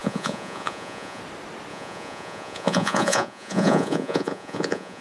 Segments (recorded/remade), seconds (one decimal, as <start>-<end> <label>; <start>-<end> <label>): 0.0-1.2 remade; 1.2-1.7 recorded; 1.7-5.0 remade